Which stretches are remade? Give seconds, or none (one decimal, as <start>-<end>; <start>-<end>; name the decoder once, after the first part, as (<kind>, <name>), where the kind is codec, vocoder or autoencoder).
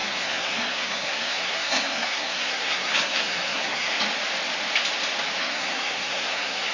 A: 0.0-4.0 (codec, SNAC); 5.4-6.7